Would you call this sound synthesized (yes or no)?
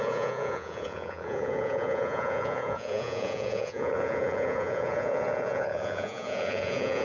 yes